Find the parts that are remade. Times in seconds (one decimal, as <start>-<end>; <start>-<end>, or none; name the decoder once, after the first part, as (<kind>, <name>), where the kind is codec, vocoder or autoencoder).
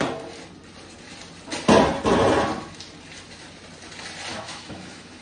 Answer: 4.3-5.2 (autoencoder, DAC-VAE)